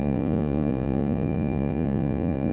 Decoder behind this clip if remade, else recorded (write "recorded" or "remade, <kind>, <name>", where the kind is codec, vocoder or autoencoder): remade, vocoder, Vocos